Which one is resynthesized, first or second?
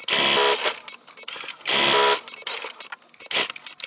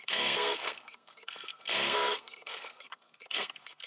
second